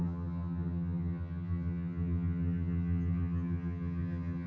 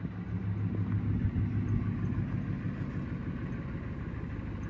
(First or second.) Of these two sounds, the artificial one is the first